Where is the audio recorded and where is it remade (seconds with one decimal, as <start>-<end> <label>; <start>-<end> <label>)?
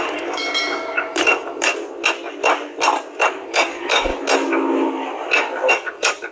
0.0-1.7 remade; 1.7-3.3 recorded; 3.3-4.1 remade; 4.1-5.7 recorded; 5.7-6.3 remade